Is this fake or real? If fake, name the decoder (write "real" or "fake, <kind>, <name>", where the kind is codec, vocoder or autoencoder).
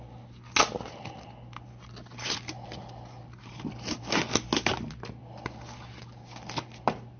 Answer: real